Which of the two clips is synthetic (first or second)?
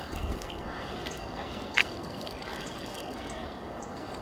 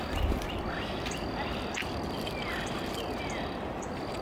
first